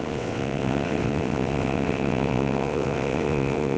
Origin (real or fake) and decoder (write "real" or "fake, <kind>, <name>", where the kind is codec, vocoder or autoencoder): fake, vocoder, WaveNeXt